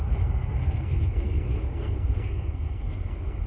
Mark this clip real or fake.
fake